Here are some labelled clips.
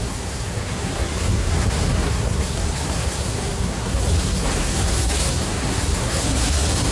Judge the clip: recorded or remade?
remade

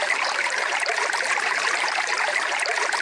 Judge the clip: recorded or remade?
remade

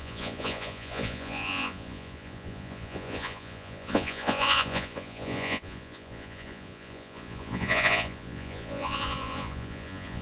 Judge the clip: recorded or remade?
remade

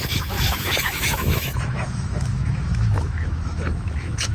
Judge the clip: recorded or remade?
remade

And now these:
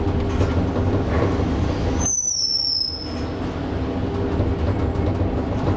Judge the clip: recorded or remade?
recorded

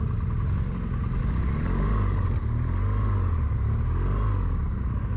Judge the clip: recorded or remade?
recorded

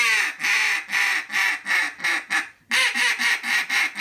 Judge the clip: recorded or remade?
recorded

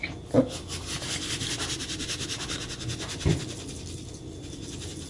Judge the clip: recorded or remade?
recorded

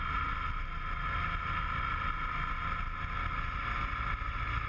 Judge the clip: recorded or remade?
recorded